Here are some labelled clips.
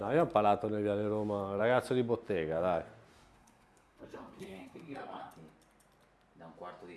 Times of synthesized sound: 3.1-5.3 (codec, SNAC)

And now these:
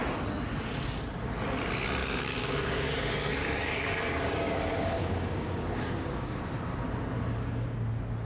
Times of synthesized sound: 2.0-6.4 (codec, DAC)

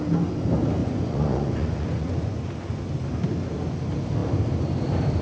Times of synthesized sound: 0.8-2.5 (vocoder, Vocos)

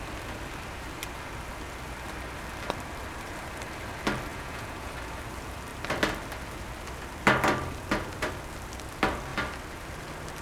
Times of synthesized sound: 4.3-4.9 (vocoder, Vocos)

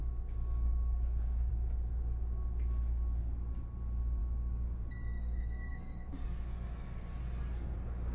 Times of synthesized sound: 0.0-1.5 (codec, DAC); 4.2-6.1

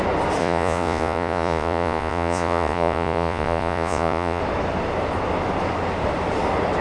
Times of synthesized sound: 0.4-4.4 (vocoder, Vocos)

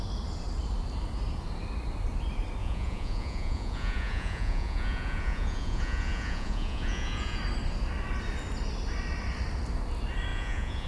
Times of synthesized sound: 2.6-7.4 (vocoder, Vocos); 10.3-10.9

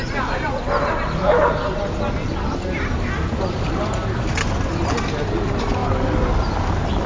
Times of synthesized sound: none